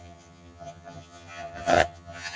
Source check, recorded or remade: remade